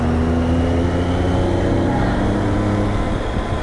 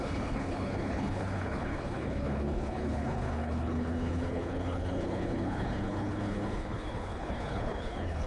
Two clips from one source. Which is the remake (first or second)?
second